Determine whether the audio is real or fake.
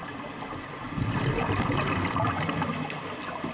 real